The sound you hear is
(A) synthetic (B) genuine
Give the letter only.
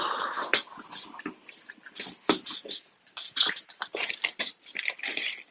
B